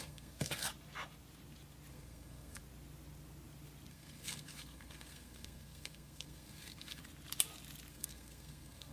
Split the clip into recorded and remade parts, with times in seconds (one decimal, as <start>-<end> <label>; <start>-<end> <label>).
0.0-0.7 remade; 0.7-1.9 recorded; 1.9-2.6 remade; 2.6-3.9 recorded; 3.9-7.0 remade; 7.0-7.9 recorded; 7.9-8.9 remade